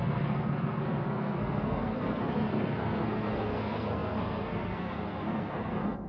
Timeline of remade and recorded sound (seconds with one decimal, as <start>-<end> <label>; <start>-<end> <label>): 0.0-6.1 remade